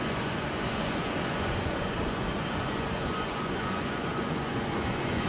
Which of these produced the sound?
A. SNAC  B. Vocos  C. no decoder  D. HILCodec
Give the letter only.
B